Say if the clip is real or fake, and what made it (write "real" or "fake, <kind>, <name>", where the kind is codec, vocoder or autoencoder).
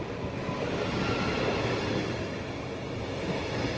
real